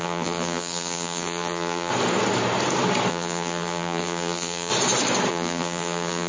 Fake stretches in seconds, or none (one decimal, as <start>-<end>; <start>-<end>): 0.0-1.9; 3.1-4.7; 5.3-6.3